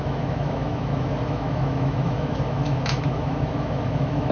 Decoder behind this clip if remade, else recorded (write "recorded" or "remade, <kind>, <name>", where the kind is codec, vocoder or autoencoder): remade, autoencoder, DAC-VAE